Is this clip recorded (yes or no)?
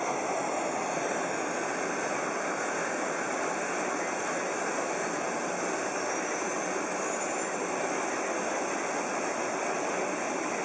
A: yes